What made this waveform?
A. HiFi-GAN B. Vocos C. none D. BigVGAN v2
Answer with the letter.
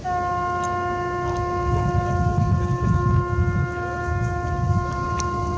C